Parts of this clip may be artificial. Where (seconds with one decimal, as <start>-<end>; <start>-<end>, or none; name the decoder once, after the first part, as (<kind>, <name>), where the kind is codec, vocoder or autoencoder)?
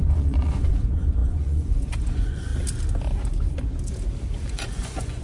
0.0-2.5 (vocoder, Vocos); 4.5-5.2